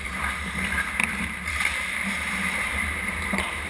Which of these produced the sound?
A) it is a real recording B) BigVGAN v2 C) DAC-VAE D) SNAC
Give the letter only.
B